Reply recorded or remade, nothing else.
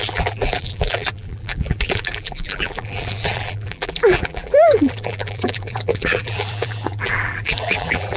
remade